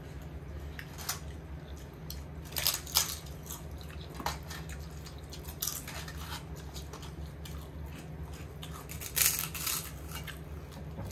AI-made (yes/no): no